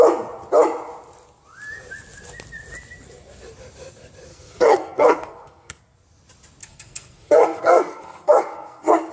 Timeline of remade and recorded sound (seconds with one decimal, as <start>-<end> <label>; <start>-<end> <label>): 0.0-4.3 recorded; 4.3-5.8 remade; 5.8-6.6 recorded; 6.6-9.1 remade